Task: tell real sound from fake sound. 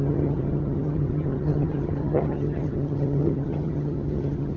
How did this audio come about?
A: fake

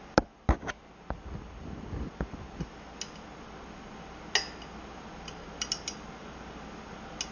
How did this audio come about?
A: real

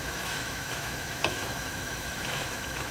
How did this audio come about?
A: fake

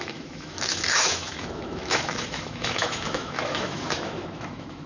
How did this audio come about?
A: fake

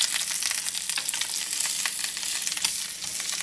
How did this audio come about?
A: real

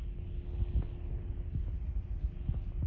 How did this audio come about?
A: real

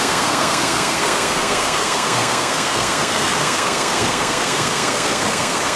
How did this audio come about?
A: fake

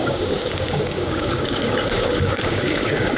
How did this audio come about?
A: fake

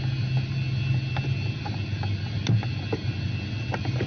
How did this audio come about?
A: real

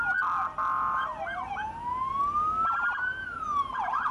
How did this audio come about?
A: real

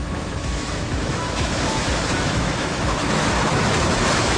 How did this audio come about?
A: fake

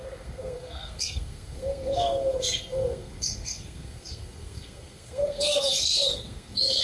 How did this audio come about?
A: fake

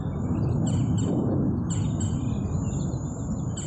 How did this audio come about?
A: real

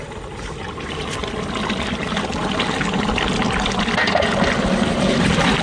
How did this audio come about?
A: real